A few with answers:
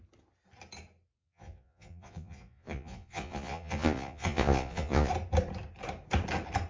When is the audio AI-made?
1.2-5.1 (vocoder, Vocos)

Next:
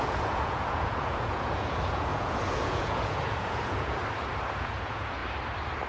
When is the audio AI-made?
0.0-4.0 (vocoder, Vocos); 4.6-5.2